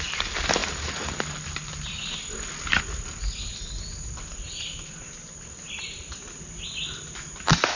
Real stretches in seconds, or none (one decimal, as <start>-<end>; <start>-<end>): 0.0-7.8